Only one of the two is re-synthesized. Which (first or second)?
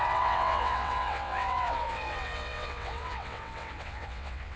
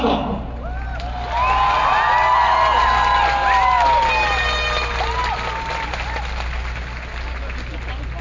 first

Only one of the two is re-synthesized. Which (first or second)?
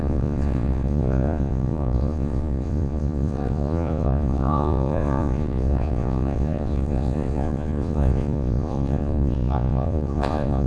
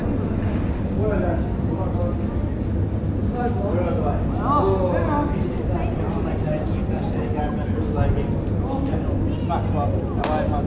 first